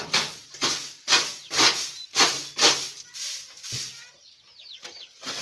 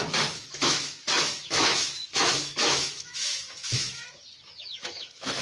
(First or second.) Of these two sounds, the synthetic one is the second